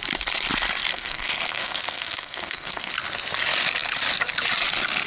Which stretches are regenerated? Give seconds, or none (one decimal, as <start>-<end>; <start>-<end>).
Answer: 0.9-2.9